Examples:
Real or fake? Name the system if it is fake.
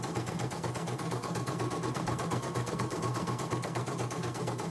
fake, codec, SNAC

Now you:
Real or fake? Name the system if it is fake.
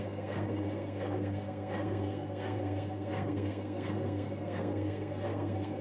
fake, codec, SNAC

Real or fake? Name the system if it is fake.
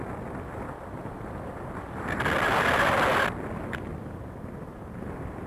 real